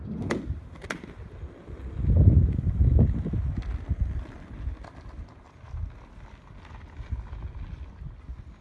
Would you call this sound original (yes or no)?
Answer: yes